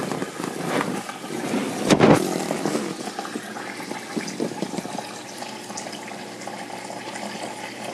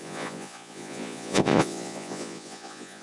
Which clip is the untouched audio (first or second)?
first